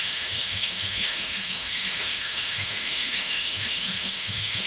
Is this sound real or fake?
fake